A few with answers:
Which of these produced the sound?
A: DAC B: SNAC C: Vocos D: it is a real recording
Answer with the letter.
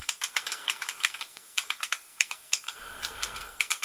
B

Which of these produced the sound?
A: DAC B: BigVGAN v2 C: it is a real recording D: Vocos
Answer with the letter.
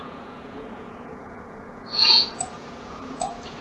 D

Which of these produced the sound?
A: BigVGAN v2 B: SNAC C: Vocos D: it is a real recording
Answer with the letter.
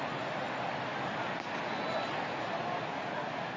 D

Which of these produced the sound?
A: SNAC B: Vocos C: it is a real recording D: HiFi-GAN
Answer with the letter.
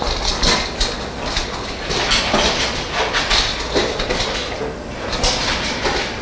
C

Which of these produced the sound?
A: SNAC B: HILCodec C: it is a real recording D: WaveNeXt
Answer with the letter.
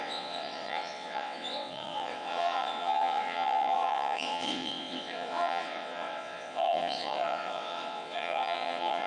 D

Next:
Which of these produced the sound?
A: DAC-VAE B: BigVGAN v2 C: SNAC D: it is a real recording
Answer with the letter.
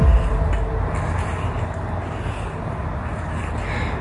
D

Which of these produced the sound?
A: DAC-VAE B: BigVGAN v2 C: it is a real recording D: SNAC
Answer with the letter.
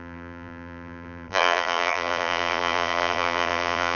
B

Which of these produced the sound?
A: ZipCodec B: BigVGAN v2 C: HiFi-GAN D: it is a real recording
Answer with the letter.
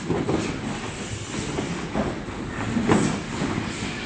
D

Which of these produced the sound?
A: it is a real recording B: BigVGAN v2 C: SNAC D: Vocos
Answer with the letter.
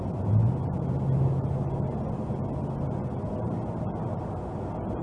A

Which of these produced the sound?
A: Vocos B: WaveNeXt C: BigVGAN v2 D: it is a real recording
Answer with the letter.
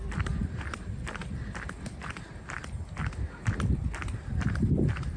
D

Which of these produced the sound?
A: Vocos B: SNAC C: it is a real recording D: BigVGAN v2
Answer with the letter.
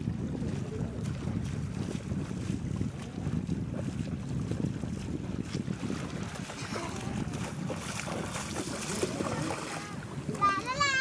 C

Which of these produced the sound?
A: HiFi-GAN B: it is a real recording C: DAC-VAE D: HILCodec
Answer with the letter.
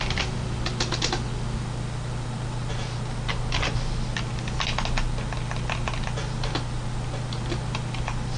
B